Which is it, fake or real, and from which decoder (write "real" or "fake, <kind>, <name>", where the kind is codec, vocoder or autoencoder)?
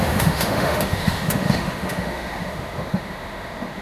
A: fake, autoencoder, DAC-VAE